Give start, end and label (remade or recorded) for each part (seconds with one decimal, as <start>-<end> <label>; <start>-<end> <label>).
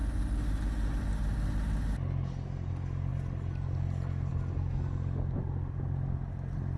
0.0-6.8 recorded